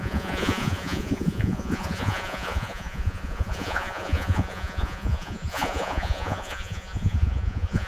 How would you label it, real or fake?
fake